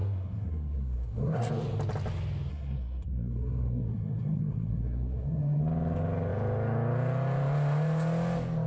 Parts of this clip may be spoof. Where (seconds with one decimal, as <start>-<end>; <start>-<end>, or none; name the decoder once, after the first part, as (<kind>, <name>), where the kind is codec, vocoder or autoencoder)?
0.0-1.5 (codec, SNAC); 2.5-5.6